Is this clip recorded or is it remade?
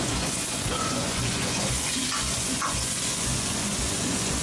remade